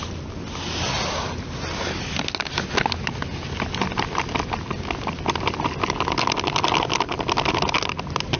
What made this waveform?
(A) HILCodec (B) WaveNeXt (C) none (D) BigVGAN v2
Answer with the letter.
C